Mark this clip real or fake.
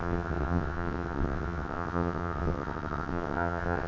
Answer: fake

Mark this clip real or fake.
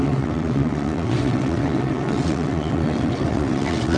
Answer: fake